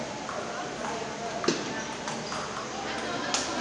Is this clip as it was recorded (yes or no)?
yes